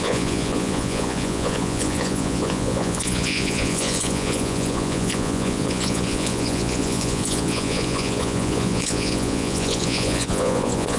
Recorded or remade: remade